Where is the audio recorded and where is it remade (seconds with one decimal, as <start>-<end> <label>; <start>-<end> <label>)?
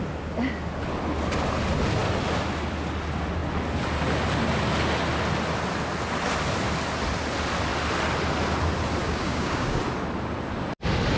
0.0-9.0 recorded; 9.0-9.8 remade; 9.8-11.2 recorded